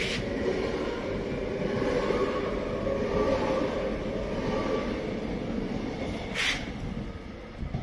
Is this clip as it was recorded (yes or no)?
yes